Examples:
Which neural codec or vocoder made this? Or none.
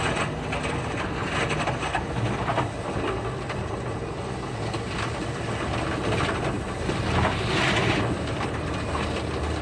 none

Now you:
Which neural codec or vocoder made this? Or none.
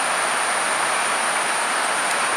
none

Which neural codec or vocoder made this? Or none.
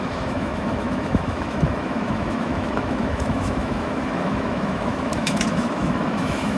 autoencoder, DAC-VAE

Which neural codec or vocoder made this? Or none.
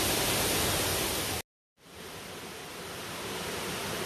none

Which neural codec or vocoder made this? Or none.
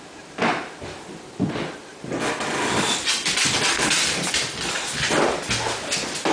none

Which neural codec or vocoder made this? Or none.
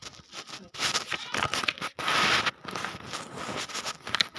none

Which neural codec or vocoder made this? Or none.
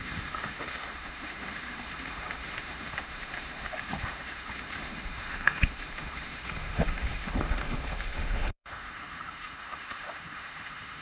autoencoder, DAC-VAE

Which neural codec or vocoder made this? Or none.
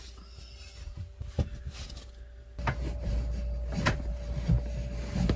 none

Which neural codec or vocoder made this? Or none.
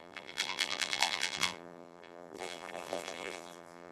vocoder, BigVGAN v2